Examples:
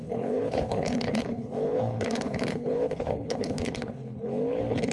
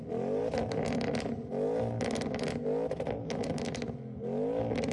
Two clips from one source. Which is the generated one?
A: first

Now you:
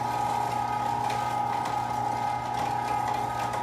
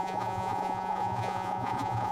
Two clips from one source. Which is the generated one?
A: second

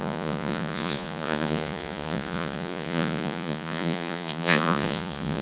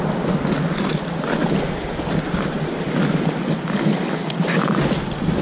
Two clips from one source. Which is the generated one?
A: first